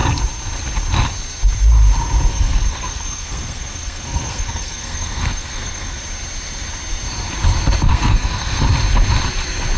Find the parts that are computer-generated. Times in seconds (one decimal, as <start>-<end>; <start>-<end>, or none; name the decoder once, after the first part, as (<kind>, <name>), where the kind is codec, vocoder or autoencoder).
2.3-6.0 (codec, SNAC); 7.9-8.6